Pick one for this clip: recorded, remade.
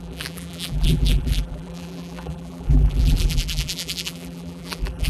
remade